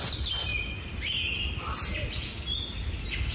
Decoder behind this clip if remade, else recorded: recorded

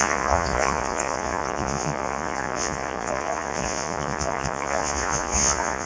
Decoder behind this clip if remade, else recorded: remade, vocoder, Vocos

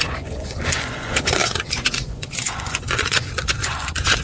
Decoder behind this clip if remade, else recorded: remade, vocoder, Vocos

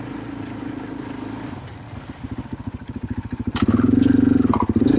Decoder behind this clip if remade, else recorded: recorded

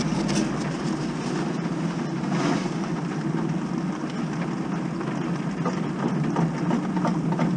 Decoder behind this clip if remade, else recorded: recorded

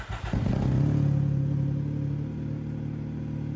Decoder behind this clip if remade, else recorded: recorded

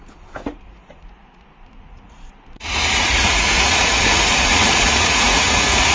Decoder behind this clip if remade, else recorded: remade, vocoder, Vocos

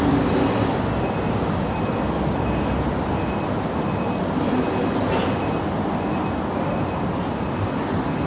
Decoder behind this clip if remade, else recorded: recorded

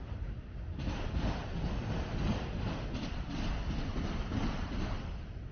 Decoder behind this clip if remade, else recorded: recorded